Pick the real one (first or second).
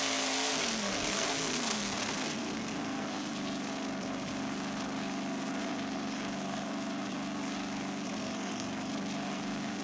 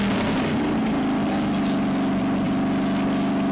second